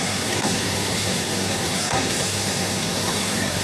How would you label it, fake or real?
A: fake